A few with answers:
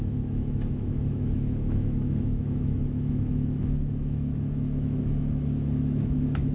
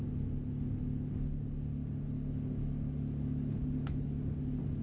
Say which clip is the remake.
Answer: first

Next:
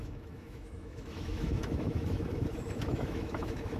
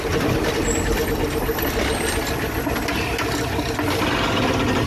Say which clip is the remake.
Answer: first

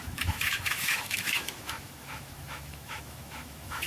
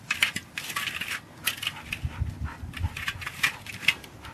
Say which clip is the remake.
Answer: first